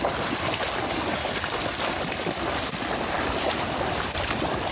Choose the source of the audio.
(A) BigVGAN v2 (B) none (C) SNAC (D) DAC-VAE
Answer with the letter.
B